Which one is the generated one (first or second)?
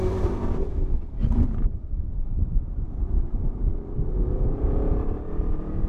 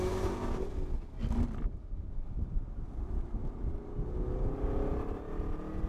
first